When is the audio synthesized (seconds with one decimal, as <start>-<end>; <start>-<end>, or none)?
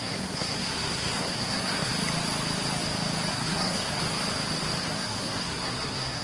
0.0-1.9; 3.3-4.0; 4.8-6.2